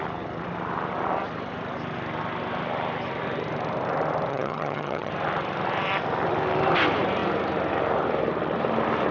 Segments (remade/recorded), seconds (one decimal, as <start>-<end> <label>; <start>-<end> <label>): 0.0-4.3 recorded; 4.3-5.1 remade; 5.1-9.1 recorded